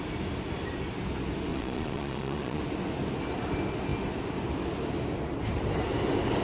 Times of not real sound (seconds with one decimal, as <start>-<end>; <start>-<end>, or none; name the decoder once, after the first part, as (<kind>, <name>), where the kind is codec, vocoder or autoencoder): 1.5-2.6 (vocoder, Vocos)